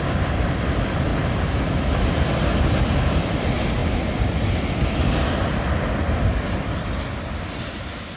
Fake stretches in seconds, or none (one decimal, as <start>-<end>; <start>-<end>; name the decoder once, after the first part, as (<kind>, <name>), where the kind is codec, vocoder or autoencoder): none